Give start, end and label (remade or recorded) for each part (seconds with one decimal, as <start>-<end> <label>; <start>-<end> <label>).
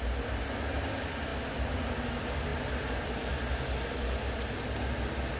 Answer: 0.0-5.4 recorded